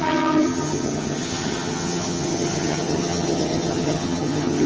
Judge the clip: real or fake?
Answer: fake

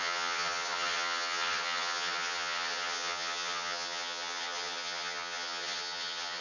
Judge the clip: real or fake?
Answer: fake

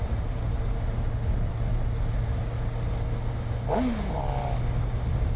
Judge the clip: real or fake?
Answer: real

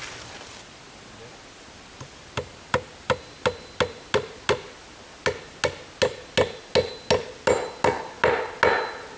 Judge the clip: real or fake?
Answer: real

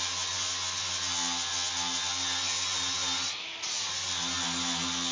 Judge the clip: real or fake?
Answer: real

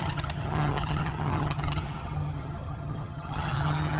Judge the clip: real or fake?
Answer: fake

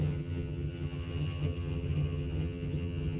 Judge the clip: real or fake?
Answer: fake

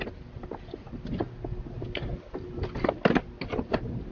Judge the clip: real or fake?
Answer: real